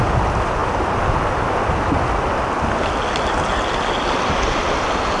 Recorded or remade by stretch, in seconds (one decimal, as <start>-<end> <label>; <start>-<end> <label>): 0.0-5.2 recorded